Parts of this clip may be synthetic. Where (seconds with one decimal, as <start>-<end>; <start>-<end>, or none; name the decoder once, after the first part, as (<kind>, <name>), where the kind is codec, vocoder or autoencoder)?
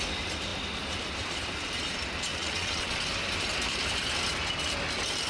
2.3-3.0 (vocoder, WaveNeXt)